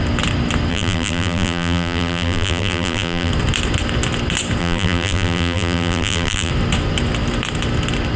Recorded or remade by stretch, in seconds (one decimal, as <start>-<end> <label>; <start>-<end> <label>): 0.0-0.7 recorded; 0.7-3.3 remade; 3.3-4.6 recorded; 4.6-6.5 remade; 6.5-8.2 recorded